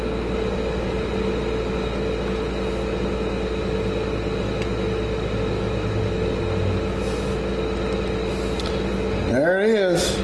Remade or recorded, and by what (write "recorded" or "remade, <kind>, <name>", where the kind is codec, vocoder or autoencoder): recorded